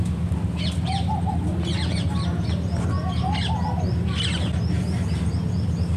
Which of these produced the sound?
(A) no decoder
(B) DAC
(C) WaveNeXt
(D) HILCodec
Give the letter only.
A